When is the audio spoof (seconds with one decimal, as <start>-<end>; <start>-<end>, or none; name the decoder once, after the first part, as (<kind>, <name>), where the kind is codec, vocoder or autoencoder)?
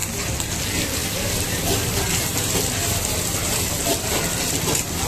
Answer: none